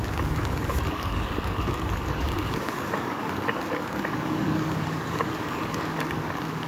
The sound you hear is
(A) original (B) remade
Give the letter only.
B